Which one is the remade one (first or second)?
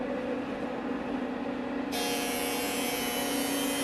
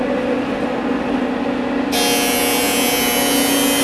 first